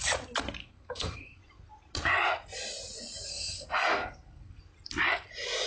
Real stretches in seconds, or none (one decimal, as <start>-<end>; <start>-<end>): 0.0-0.6; 1.4-3.3; 4.6-5.7